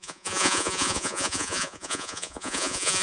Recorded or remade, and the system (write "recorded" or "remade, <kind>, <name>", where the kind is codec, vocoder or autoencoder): remade, vocoder, Vocos